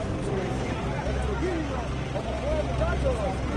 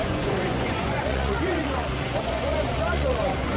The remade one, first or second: second